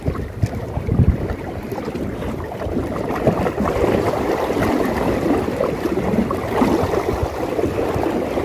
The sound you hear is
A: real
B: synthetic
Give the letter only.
A